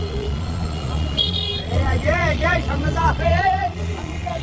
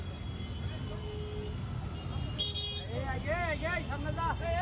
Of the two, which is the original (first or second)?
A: second